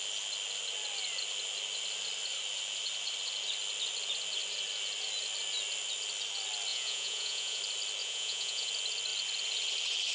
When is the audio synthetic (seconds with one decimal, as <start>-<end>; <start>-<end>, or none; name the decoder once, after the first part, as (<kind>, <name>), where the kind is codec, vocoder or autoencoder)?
6.7-7.6 (vocoder, Vocos); 8.0-8.7